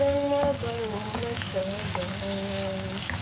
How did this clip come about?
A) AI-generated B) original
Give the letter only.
A